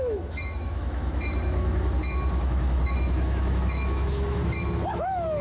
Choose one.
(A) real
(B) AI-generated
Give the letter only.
B